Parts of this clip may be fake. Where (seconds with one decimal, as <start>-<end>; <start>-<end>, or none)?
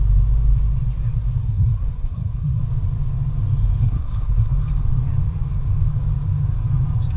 1.4-2.6; 3.8-4.5